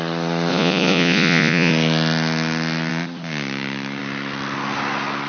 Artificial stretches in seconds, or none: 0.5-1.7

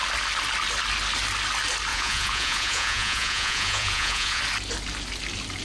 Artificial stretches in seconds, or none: 1.9-4.4

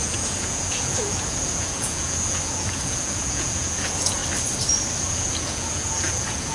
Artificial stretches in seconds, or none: 0.0-4.2; 5.0-6.5

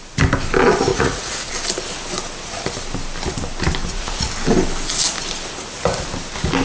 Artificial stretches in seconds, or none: 0.9-1.5; 3.8-4.3